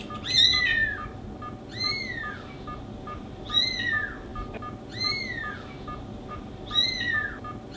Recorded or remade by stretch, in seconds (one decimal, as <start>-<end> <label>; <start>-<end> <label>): 0.0-7.8 recorded